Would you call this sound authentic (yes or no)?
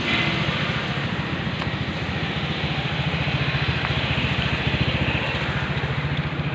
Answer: yes